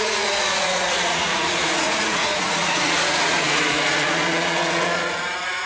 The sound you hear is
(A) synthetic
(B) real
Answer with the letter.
A